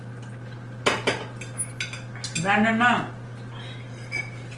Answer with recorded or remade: recorded